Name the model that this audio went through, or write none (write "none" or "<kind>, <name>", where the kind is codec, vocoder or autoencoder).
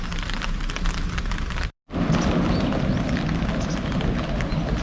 none